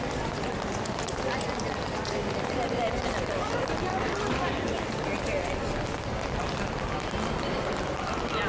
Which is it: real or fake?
real